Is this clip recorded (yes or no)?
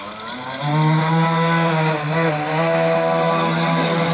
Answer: yes